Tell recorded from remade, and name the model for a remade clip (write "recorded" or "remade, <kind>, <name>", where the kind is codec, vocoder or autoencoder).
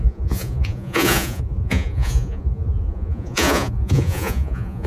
remade, vocoder, Vocos